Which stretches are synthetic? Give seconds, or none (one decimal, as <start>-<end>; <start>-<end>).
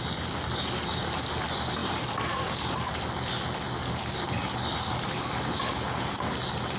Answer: 1.8-3.0